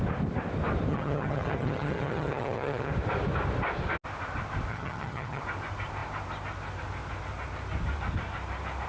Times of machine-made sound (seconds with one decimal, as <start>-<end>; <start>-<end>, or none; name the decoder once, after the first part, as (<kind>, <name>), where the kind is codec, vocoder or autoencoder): 0.9-2.9 (vocoder, HiFi-GAN); 4.7-5.4